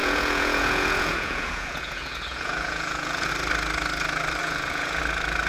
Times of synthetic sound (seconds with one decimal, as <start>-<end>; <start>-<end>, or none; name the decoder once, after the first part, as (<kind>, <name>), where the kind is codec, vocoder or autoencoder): 0.0-3.3 (vocoder, Vocos); 4.4-5.0

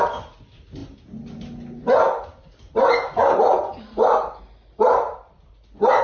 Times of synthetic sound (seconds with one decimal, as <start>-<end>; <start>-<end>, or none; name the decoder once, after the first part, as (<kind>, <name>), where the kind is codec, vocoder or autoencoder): none